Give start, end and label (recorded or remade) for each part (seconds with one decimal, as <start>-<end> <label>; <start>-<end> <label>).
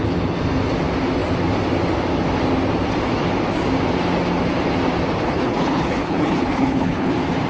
0.0-5.2 recorded; 5.2-7.1 remade; 7.1-7.5 recorded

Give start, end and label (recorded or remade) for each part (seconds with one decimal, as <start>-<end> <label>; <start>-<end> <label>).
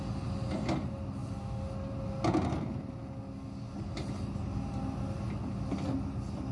0.0-6.5 recorded